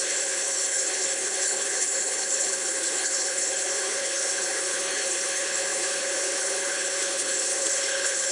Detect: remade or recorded remade